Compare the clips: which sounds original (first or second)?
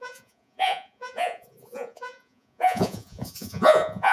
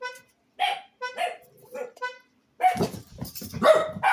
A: second